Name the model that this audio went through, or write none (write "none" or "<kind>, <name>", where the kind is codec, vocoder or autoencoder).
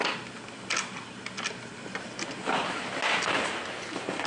none